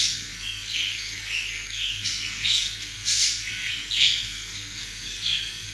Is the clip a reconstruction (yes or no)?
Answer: yes